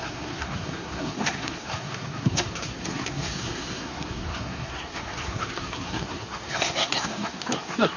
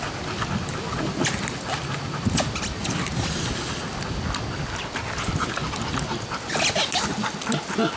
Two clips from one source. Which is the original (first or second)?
second